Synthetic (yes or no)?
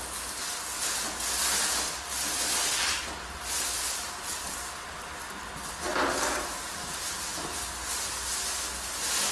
no